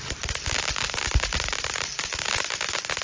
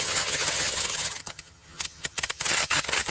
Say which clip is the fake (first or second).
second